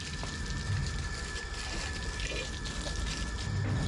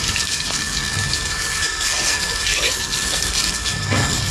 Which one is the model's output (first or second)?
second